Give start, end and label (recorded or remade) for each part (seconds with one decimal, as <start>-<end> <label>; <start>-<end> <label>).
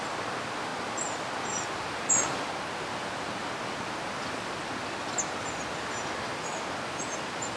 0.0-7.6 recorded